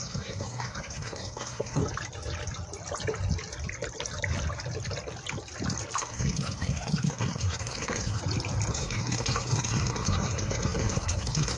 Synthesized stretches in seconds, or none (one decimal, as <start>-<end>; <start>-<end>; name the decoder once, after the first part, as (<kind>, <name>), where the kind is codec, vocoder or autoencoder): 0.0-1.8 (codec, SNAC); 6.0-8.2; 8.7-11.6